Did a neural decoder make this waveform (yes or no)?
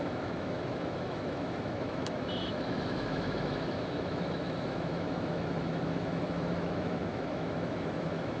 yes